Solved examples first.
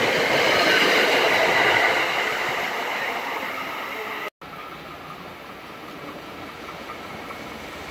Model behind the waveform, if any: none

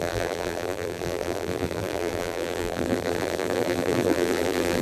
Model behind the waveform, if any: vocoder, BigVGAN v2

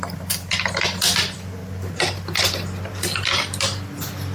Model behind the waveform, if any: none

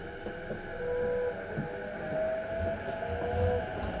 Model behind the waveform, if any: none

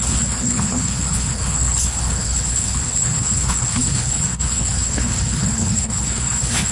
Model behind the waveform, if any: codec, HILCodec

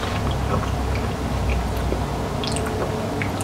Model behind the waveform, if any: none